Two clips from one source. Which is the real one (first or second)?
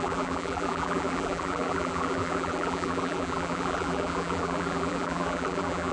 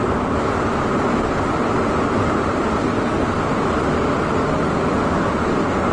second